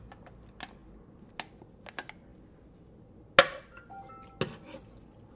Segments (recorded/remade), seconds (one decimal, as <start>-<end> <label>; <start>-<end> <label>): 0.0-5.4 recorded